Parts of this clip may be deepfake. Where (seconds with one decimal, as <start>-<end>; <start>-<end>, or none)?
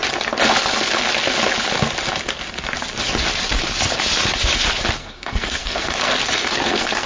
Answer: 5.0-7.1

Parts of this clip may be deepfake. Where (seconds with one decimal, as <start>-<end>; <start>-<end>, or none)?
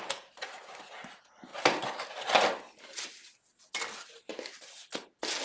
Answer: none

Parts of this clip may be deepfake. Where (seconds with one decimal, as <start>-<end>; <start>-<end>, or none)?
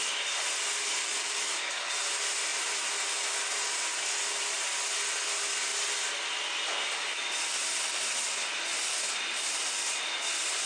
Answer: 1.0-1.9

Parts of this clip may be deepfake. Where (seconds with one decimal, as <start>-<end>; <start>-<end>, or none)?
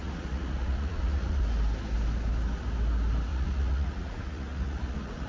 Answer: 0.0-1.4; 3.3-5.3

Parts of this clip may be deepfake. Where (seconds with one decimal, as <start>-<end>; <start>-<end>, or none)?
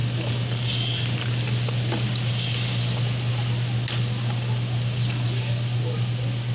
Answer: none